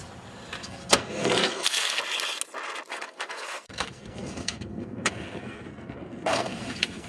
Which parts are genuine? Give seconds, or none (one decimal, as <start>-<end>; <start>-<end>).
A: 0.0-0.6; 2.0-2.9